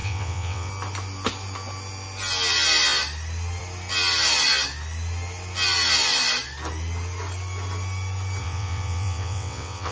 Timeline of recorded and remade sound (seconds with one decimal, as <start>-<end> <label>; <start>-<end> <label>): 0.0-0.7 remade; 0.7-8.4 recorded; 8.4-9.9 remade